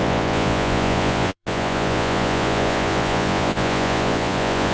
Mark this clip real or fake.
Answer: fake